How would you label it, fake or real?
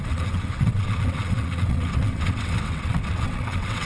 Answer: fake